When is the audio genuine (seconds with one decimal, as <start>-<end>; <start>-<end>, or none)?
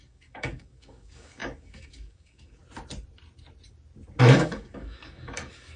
2.6-4.2